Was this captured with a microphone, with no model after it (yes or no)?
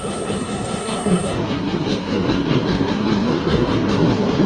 no